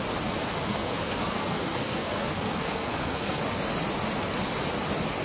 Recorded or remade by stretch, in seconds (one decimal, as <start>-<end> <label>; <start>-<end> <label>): 0.0-0.7 recorded; 0.7-3.4 remade; 3.4-5.2 recorded